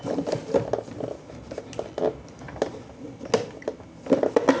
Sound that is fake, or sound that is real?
real